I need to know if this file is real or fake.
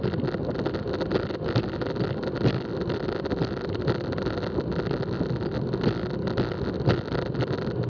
real